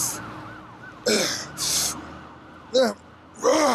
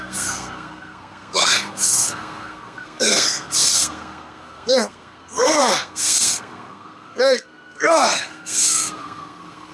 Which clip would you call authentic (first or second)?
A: first